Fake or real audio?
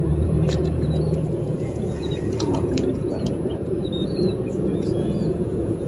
fake